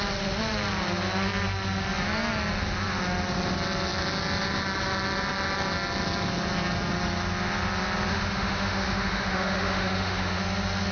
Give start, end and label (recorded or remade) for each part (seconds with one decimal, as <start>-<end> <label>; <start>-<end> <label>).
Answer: 0.0-8.1 recorded; 8.1-10.4 remade; 10.4-10.9 recorded